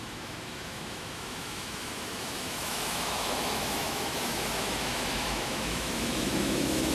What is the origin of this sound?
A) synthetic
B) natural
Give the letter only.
A